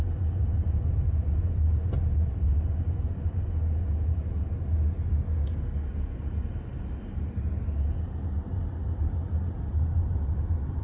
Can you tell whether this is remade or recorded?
recorded